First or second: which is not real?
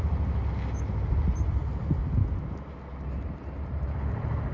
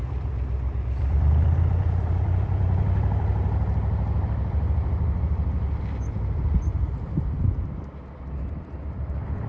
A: second